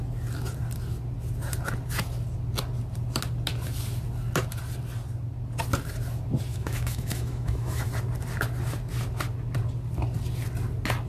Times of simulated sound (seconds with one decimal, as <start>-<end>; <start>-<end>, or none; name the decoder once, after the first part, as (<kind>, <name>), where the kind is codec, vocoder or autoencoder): 6.5-7.9 (autoencoder, DAC-VAE)